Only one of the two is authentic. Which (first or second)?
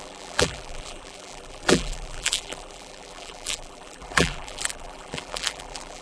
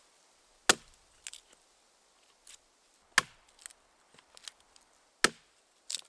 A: second